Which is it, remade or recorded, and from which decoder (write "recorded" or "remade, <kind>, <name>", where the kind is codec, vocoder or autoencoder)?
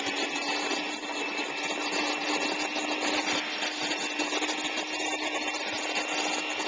recorded